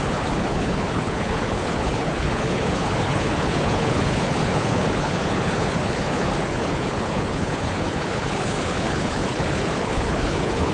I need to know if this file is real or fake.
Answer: fake